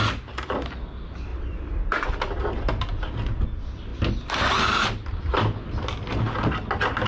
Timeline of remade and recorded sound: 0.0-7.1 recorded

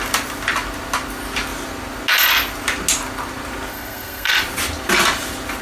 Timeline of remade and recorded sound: 0.0-3.7 recorded; 3.7-4.4 remade; 4.4-5.6 recorded

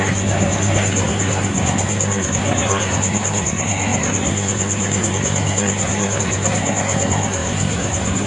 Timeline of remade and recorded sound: 0.0-8.3 remade

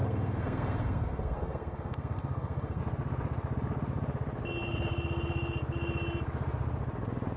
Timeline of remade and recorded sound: 0.0-2.8 remade; 2.8-7.4 recorded